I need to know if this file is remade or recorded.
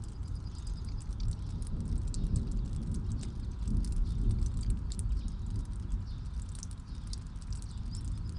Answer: recorded